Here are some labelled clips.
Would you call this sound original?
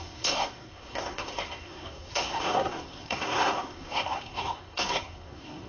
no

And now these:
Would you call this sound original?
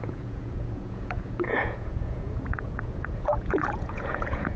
no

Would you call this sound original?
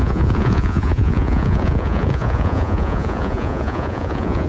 no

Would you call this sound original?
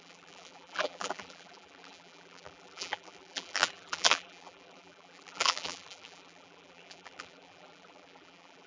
no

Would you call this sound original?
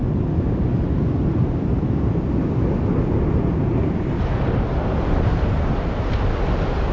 yes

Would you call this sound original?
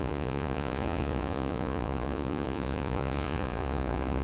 no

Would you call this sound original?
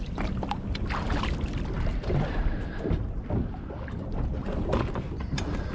yes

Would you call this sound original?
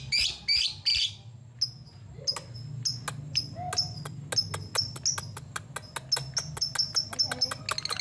yes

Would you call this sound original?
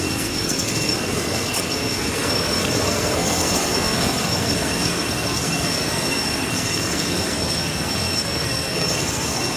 no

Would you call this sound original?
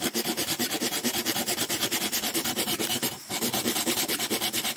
no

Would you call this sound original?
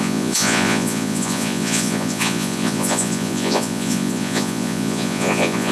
no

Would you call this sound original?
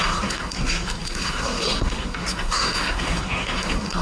no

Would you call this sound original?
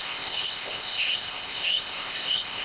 no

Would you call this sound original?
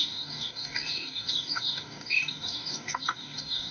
no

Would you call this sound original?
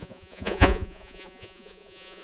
no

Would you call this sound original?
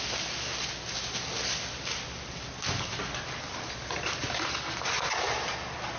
yes